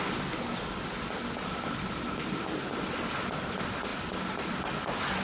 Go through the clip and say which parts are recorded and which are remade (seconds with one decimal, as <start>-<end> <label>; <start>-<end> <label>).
0.0-5.2 recorded